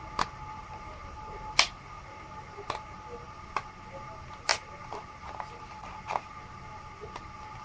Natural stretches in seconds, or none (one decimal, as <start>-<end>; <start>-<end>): 0.0-7.6